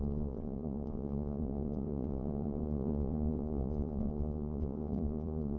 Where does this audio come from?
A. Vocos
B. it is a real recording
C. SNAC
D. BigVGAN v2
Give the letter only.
A